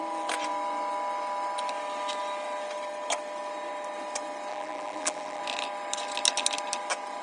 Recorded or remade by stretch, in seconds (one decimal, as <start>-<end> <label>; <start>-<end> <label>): 0.0-4.5 recorded; 4.5-5.4 remade; 5.4-7.2 recorded